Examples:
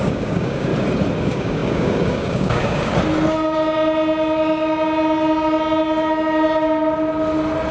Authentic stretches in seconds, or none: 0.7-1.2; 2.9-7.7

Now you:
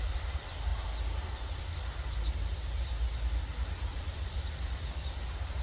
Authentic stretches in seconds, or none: 0.0-3.9; 4.5-5.6

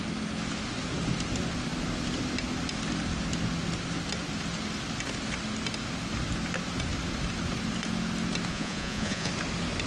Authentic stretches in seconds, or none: 0.0-8.5; 9.3-9.9